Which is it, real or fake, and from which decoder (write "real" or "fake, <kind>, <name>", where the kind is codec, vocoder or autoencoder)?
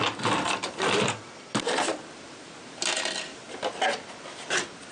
real